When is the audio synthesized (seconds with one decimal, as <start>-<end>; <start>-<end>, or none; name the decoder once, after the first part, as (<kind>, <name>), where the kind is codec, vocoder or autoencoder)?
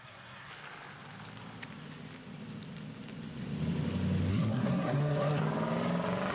0.0-0.5 (codec, SNAC); 4.3-5.4